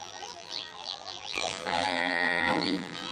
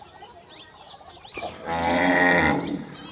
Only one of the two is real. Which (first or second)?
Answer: second